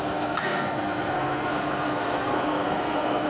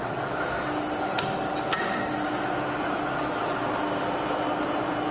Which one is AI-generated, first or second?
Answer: first